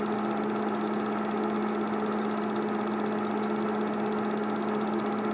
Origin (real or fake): real